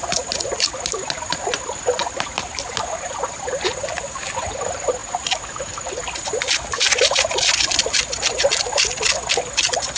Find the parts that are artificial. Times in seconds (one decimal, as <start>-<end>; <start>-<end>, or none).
none